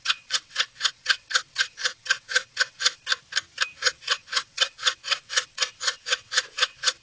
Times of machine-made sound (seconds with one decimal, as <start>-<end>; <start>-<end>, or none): 0.0-3.1; 3.8-7.0